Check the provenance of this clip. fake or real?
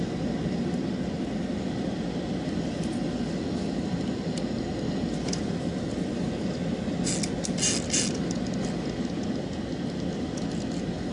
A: real